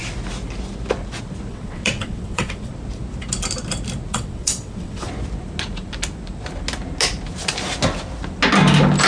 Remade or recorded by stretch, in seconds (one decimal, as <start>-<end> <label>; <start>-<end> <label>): 0.0-1.5 recorded; 1.5-2.7 remade; 2.7-4.1 recorded; 4.1-5.1 remade; 5.1-9.1 recorded

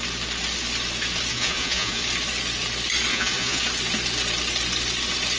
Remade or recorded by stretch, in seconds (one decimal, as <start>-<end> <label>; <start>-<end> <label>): 0.0-1.3 recorded; 1.3-2.0 remade; 2.0-3.1 recorded; 3.1-3.6 remade; 3.6-5.4 recorded